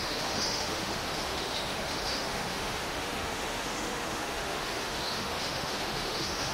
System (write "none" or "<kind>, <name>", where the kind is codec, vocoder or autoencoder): autoencoder, DAC-VAE